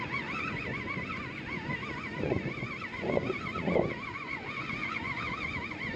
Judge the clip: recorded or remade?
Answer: remade